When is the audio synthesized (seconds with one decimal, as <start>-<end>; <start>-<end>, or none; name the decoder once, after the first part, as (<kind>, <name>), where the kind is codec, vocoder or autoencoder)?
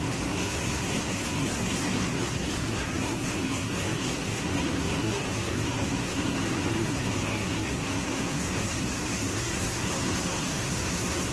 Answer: 0.0-11.3 (codec, SNAC)